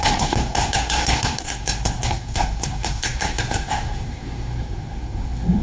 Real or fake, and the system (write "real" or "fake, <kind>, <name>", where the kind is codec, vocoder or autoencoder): fake, codec, SNAC